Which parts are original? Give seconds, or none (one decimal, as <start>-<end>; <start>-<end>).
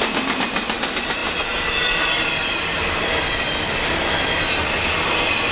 0.0-5.5